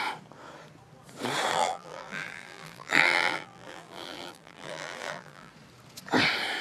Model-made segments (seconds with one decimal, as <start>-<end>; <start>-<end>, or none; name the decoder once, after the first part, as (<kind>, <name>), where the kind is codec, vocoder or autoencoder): 1.5-5.5 (vocoder, BigVGAN v2)

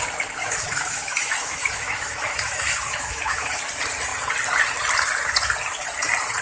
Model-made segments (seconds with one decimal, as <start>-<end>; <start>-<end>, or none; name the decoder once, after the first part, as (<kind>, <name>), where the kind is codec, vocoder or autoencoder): 0.4-3.6 (autoencoder, DAC-VAE)

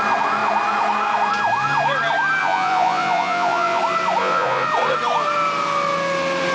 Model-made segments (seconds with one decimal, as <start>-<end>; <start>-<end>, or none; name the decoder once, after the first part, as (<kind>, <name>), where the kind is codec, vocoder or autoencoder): 2.4-3.8 (vocoder, Vocos); 4.2-4.7

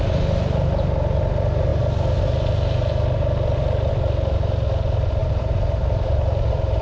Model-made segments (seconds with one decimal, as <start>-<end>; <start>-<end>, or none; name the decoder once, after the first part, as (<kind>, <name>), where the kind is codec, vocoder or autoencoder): 5.2-6.8 (vocoder, BigVGAN v2)

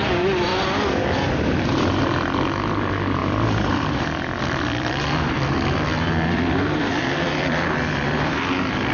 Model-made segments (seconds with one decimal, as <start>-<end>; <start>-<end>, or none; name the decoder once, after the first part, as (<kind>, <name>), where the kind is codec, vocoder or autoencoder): 0.5-2.0 (vocoder, BigVGAN v2); 3.2-7.4

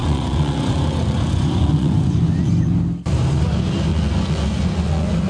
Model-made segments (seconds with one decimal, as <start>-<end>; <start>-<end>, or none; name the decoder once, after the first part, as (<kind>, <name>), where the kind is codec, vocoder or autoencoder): 0.0-2.7 (vocoder, Vocos); 3.9-5.3

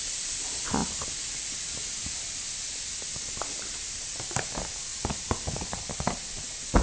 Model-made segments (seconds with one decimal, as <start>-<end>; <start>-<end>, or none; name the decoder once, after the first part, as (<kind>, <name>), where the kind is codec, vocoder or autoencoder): none